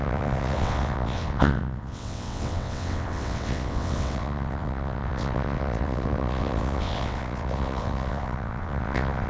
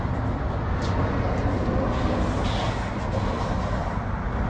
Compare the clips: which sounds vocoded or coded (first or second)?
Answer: first